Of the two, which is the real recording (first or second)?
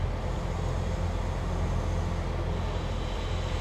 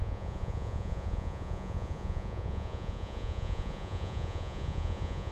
first